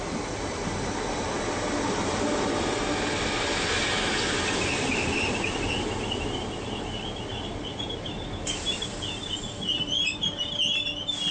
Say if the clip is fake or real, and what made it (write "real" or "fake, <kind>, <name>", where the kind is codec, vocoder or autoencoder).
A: real